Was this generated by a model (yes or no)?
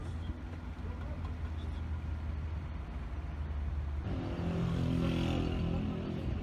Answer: no